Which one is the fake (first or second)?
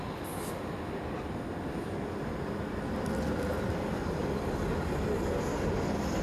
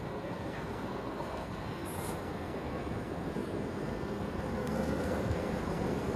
second